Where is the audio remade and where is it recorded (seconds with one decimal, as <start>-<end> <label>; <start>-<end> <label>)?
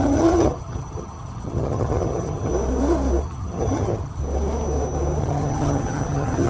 0.0-2.5 remade; 2.5-3.2 recorded; 3.2-4.2 remade; 4.2-5.2 recorded; 5.2-6.5 remade